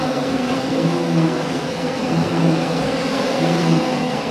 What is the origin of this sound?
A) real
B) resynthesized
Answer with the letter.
B